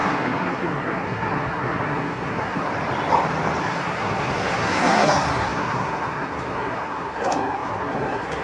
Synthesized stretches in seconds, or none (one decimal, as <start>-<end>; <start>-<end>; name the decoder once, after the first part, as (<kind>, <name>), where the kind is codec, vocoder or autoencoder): 0.0-2.7 (codec, SNAC); 3.6-8.4